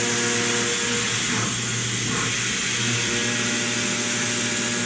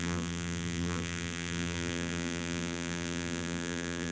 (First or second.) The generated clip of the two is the second